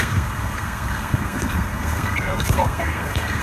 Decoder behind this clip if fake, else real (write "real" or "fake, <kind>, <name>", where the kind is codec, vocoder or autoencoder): fake, codec, SNAC